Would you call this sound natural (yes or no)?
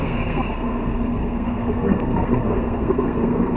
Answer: no